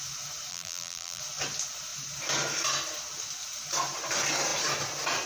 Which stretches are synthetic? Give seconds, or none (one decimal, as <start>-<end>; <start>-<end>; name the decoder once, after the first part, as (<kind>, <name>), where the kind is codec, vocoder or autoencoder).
0.5-1.2 (vocoder, BigVGAN v2)